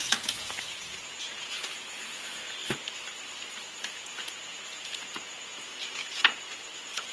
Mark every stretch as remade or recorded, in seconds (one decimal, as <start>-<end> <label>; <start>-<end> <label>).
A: 0.0-2.6 remade; 2.6-3.8 recorded; 3.8-7.1 remade